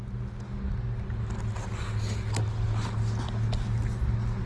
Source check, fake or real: real